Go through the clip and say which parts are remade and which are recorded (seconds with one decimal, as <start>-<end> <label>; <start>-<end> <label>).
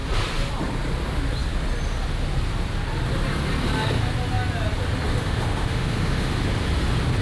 0.0-5.2 recorded; 5.2-6.5 remade; 6.5-7.2 recorded